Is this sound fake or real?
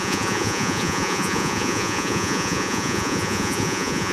fake